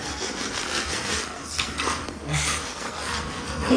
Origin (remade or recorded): remade